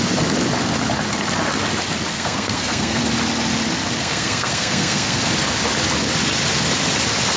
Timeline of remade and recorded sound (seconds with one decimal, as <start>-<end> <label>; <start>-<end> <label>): 0.0-2.1 recorded; 2.1-3.0 remade; 3.0-4.0 recorded; 4.0-5.2 remade; 5.2-7.4 recorded